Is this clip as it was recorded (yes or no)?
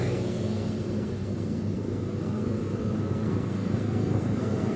no